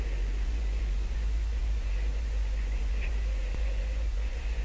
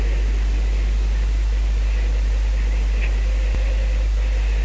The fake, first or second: first